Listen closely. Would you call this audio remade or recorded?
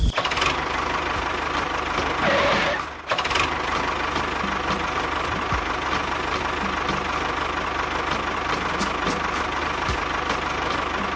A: recorded